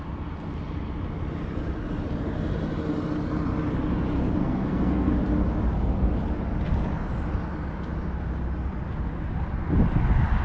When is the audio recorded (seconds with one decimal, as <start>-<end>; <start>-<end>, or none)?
0.0-4.4; 5.1-10.4